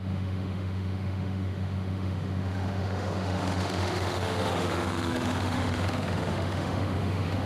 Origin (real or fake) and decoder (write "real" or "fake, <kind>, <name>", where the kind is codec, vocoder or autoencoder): fake, autoencoder, DAC-VAE